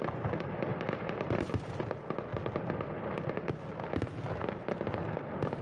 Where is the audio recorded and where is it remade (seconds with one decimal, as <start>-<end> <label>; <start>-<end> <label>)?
0.0-0.7 recorded; 0.7-1.5 remade; 1.5-5.6 recorded